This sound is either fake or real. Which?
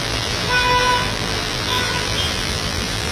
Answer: fake